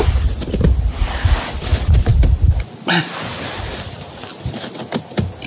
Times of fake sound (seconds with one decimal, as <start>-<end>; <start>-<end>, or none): none